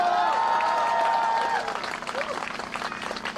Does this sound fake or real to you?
real